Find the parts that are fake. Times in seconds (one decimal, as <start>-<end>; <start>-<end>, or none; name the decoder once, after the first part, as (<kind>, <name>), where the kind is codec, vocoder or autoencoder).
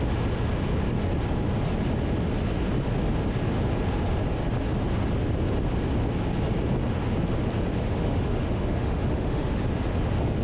7.8-9.6 (autoencoder, DAC-VAE)